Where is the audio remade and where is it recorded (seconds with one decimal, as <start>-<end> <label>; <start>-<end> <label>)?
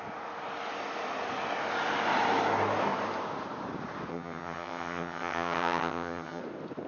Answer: 0.0-4.1 recorded; 4.1-6.4 remade; 6.4-6.9 recorded